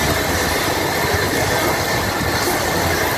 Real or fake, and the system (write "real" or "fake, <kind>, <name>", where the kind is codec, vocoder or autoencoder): real